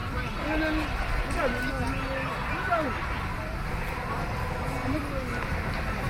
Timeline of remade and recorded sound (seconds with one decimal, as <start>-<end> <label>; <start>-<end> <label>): 0.0-6.1 recorded